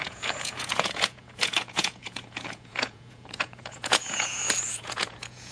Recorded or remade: remade